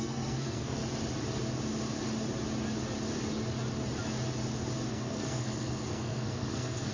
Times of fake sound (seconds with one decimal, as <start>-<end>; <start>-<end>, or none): 0.0-0.8; 4.9-6.9